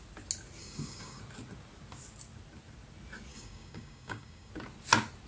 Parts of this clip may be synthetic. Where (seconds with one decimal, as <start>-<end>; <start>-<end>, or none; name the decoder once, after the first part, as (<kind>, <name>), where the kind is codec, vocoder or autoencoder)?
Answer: 0.6-1.2 (codec, DAC); 3.3-4.5